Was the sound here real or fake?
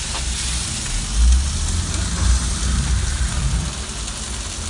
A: real